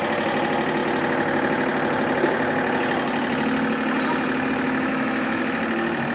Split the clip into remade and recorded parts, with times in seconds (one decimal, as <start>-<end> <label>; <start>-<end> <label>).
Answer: 0.0-4.9 recorded; 4.9-5.4 remade; 5.4-6.1 recorded